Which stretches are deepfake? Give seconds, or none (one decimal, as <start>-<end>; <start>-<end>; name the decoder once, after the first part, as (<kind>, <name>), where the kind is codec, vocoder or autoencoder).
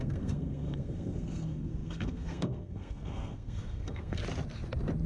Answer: 0.0-4.2 (codec, SNAC)